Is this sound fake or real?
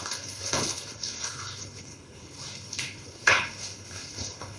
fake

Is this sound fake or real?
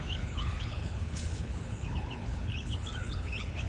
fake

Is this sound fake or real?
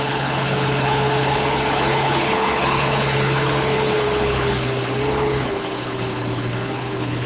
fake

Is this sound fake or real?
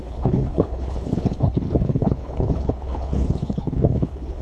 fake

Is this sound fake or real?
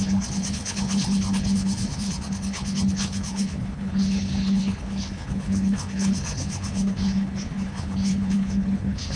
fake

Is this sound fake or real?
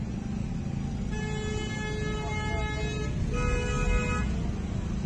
real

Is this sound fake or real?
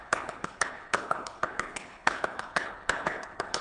fake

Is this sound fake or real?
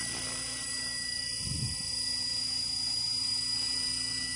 real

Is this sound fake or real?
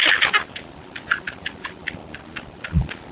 real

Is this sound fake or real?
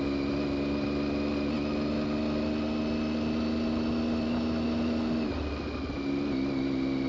real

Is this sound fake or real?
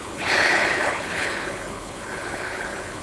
fake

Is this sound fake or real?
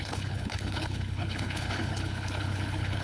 fake